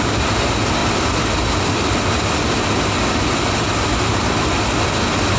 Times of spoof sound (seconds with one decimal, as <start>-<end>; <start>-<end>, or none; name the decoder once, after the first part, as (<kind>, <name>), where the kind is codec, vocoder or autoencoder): none